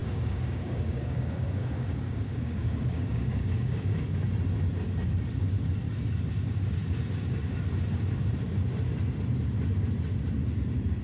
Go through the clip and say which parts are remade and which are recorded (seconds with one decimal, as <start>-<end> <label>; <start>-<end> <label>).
0.0-4.3 remade; 4.3-11.0 recorded